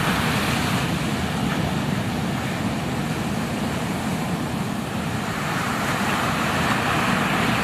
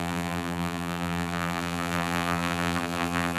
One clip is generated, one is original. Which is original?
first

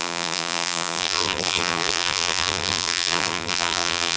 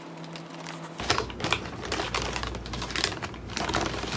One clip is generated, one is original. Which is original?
second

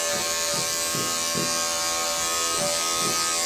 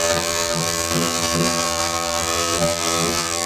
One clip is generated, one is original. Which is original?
first